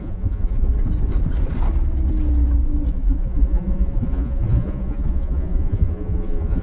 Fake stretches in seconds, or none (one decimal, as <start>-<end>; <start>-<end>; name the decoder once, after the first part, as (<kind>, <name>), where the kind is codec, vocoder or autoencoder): 0.0-0.7 (vocoder, Vocos); 2.9-6.6